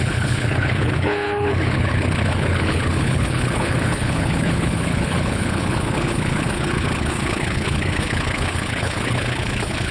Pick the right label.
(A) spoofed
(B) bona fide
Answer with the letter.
A